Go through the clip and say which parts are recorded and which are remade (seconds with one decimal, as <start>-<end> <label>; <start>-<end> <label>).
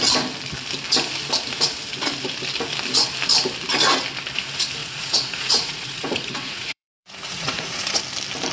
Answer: 0.0-4.8 recorded; 4.8-8.0 remade; 8.0-8.5 recorded